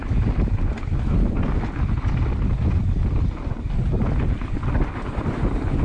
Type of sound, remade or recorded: recorded